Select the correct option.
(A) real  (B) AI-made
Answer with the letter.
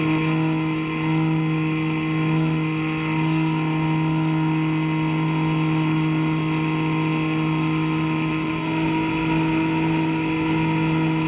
A